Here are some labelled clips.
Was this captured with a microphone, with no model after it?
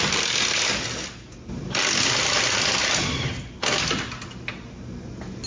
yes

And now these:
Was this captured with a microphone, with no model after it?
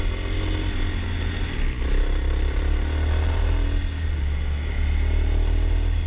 yes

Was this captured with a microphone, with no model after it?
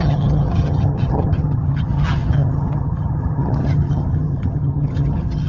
no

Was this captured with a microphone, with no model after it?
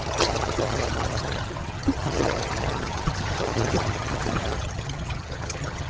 no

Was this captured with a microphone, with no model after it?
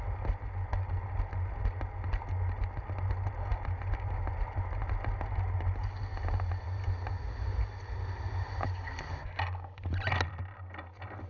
yes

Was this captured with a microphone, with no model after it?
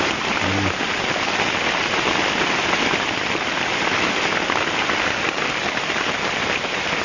yes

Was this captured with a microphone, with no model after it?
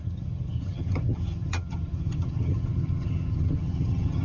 no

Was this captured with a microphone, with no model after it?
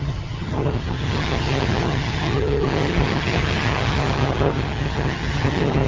no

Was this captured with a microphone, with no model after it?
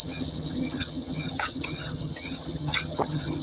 no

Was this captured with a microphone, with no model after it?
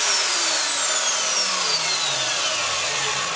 yes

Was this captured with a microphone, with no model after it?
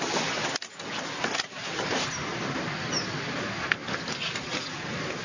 yes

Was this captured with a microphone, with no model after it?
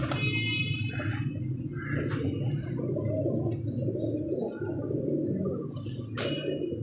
yes